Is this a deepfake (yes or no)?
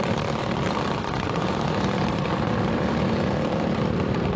yes